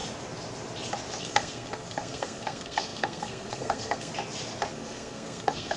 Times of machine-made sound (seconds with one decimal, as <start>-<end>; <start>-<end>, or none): 1.2-4.1; 4.7-5.8